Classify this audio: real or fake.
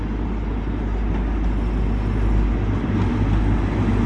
real